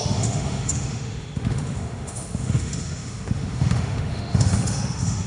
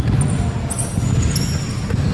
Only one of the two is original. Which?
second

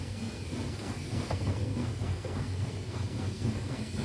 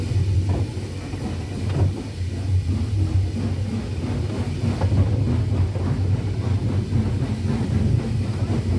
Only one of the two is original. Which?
second